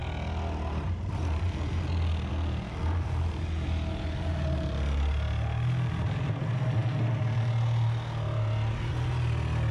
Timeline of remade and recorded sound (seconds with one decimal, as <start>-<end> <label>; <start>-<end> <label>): 0.0-9.7 recorded